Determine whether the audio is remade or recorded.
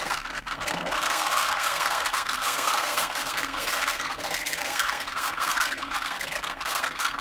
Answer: remade